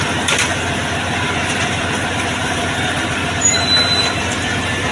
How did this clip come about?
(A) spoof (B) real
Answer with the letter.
B